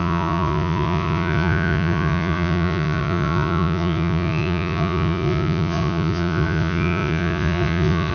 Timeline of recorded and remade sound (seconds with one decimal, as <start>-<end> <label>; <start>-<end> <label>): 0.0-8.1 remade